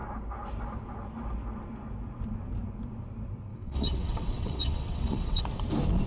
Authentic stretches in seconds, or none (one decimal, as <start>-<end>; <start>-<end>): 0.0-3.5; 5.4-6.1